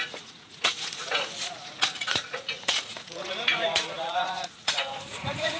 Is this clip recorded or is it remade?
remade